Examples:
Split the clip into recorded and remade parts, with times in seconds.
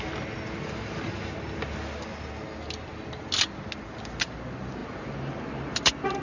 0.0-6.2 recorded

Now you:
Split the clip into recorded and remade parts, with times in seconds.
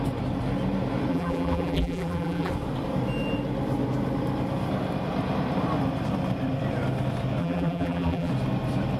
0.0-1.1 recorded; 1.1-2.5 remade; 2.5-7.4 recorded; 7.4-8.3 remade; 8.3-9.0 recorded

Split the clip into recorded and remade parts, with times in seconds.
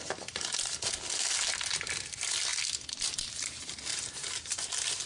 0.0-3.9 recorded; 3.9-5.1 remade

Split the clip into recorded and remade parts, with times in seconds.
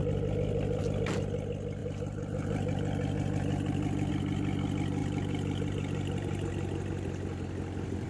0.0-1.8 recorded; 1.8-4.1 remade; 4.1-5.0 recorded; 5.0-6.5 remade; 6.5-8.1 recorded